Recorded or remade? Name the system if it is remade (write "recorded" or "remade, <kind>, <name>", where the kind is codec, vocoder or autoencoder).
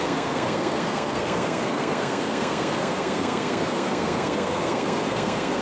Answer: remade, codec, SNAC